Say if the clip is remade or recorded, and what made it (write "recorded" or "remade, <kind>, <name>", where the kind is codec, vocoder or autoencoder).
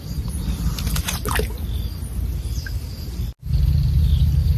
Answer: recorded